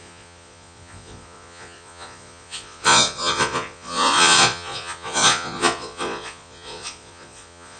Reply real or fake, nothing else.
fake